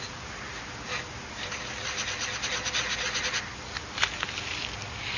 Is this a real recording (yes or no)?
yes